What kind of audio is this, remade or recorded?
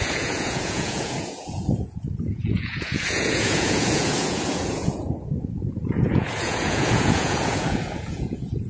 remade